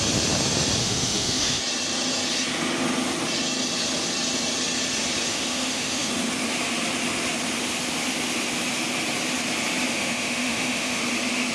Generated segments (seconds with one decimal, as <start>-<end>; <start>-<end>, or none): 0.8-1.6; 5.3-6.1; 9.9-11.0

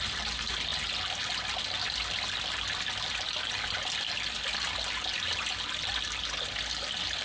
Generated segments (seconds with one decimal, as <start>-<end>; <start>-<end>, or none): none

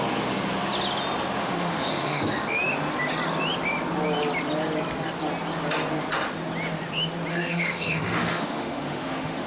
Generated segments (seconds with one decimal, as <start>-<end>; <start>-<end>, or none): 1.4-2.2; 7.3-9.5

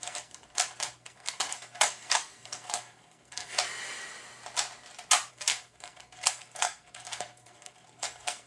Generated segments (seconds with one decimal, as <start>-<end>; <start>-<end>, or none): 0.0-3.6; 5.3-8.5

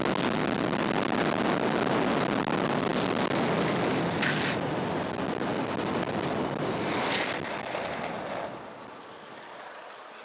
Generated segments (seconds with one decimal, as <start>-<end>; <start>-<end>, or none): none